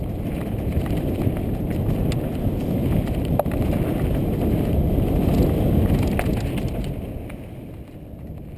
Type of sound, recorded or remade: recorded